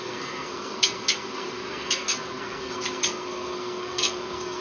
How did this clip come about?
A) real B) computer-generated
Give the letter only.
B